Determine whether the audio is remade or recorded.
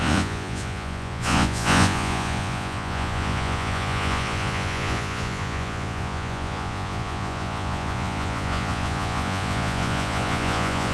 remade